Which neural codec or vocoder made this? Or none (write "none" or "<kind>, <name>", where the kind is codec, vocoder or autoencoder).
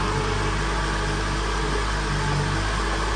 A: none